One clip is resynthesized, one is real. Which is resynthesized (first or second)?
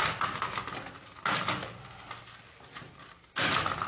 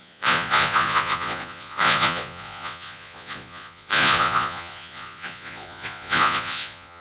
second